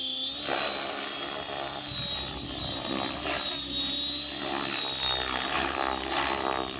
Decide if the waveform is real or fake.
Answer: real